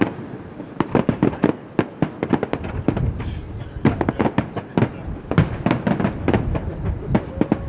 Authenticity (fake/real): real